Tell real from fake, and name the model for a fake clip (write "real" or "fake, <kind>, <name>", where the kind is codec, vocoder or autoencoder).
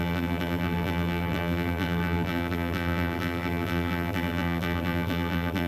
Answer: fake, vocoder, BigVGAN v2